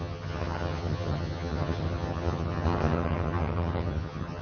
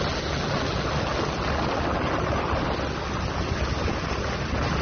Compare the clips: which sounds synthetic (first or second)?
first